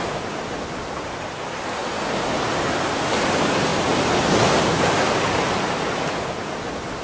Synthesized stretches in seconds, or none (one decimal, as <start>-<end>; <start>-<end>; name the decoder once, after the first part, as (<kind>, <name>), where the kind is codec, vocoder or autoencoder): 0.0-1.8 (vocoder, BigVGAN v2); 2.5-3.7; 4.6-7.0